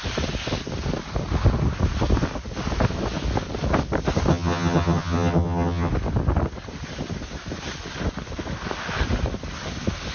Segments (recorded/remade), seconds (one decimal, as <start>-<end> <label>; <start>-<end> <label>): 0.0-4.3 recorded; 4.3-5.9 remade; 5.9-10.1 recorded